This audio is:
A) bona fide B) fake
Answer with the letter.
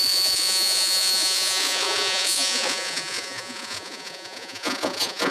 B